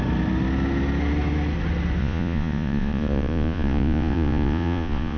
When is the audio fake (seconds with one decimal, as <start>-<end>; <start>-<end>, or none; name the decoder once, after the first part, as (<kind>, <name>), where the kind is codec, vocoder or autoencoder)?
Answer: 2.0-5.2 (vocoder, Vocos)